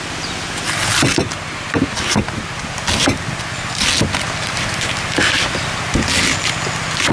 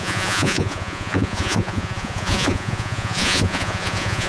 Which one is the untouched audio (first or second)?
first